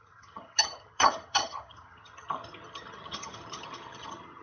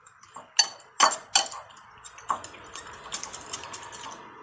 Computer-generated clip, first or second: first